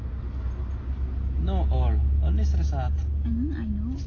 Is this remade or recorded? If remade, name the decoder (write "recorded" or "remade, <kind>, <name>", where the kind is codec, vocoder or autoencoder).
recorded